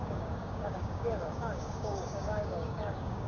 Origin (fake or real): fake